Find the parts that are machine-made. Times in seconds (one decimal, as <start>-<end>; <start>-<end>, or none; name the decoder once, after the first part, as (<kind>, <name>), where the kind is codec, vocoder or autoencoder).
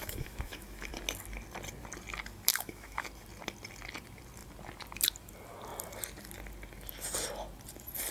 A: 0.0-0.9 (autoencoder, DAC-VAE); 2.5-3.1